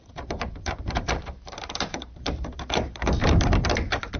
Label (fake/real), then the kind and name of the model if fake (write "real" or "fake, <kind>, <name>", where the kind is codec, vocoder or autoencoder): fake, vocoder, BigVGAN v2